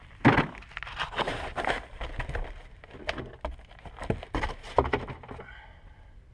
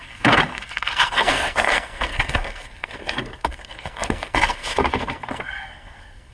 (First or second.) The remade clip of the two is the second